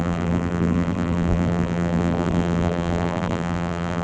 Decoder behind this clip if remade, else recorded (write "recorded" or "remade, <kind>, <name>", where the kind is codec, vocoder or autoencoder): remade, vocoder, BigVGAN v2